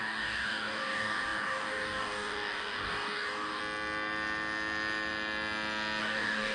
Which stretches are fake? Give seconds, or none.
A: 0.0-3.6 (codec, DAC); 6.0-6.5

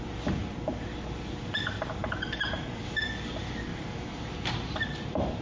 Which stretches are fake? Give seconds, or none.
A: 3.7-5.4 (vocoder, BigVGAN v2)

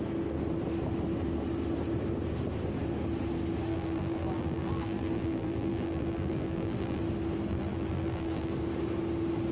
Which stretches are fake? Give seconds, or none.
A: 3.7-7.0 (vocoder, BigVGAN v2); 7.5-8.5

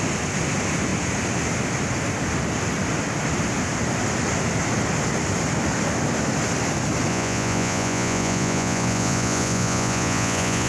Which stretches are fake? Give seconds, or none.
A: 7.1-10.7 (vocoder, Vocos)